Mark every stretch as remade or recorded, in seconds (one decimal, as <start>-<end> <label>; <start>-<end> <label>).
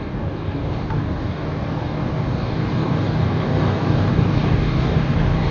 0.0-5.5 remade